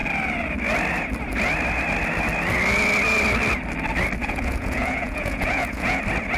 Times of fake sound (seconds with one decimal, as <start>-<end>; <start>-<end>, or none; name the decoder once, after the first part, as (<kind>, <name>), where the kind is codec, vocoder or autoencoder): 4.2-6.0 (vocoder, Vocos)